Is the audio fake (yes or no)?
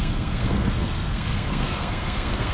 yes